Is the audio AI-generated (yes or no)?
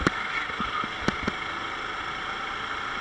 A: no